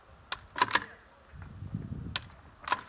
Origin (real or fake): real